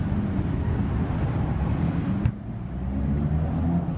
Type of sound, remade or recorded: recorded